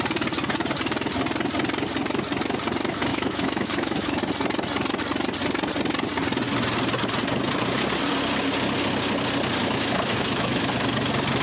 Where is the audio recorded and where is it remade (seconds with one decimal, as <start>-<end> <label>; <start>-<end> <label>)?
0.0-3.1 recorded; 3.1-4.2 remade; 4.2-9.6 recorded; 9.6-10.7 remade; 10.7-11.4 recorded